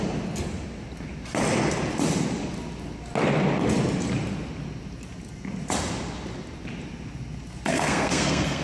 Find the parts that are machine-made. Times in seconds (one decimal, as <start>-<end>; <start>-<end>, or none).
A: 7.7-8.6